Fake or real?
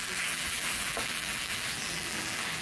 fake